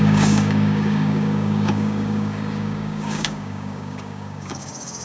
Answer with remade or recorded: remade